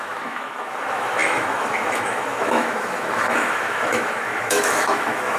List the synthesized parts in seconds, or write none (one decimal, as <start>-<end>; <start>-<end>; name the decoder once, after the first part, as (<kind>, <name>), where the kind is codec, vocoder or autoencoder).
0.0-5.4 (autoencoder, DAC-VAE)